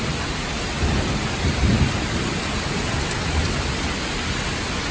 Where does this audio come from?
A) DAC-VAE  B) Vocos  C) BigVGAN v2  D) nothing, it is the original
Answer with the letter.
D